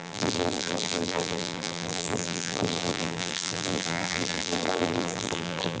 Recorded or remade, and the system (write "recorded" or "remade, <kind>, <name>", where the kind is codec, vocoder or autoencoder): remade, vocoder, BigVGAN v2